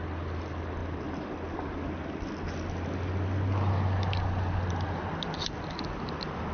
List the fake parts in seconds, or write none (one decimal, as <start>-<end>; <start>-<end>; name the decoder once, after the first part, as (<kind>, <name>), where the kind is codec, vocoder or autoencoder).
none